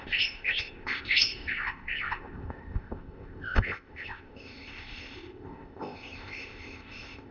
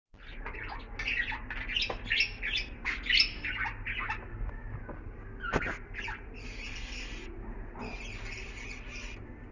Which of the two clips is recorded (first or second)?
second